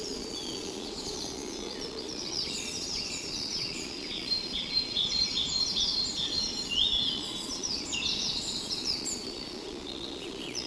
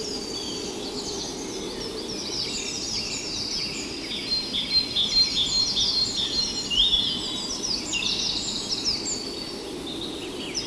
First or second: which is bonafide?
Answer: second